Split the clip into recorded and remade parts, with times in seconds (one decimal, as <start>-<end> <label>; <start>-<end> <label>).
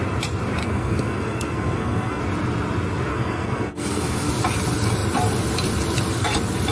0.0-0.6 recorded; 0.6-2.2 remade; 2.2-3.1 recorded; 3.1-4.3 remade; 4.3-6.7 recorded